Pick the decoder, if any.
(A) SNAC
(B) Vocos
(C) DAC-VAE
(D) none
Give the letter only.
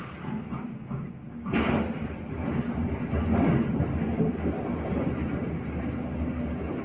D